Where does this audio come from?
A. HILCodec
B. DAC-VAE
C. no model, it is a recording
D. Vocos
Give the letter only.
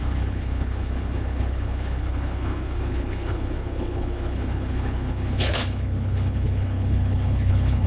A